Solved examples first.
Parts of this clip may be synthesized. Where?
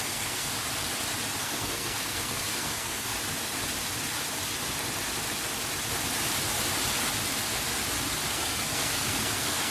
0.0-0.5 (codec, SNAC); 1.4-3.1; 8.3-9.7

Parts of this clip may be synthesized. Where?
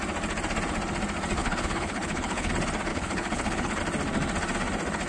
1.4-2.5 (codec, HILCodec); 2.9-3.8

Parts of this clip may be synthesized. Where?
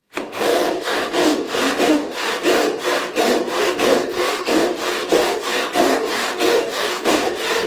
0.0-2.6 (codec, DAC); 3.6-7.7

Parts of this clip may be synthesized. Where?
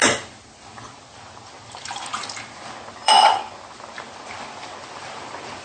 3.0-3.6 (vocoder, Vocos)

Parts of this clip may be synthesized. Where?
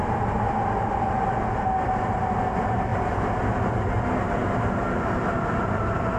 none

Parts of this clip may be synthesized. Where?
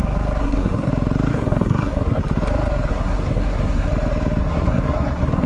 0.4-0.9 (codec, SNAC); 1.3-2.2; 2.9-3.9; 4.4-5.5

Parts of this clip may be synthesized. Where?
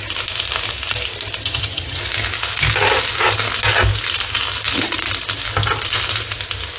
1.4-2.0 (vocoder, HiFi-GAN)